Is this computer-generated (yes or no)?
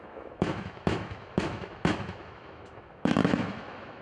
yes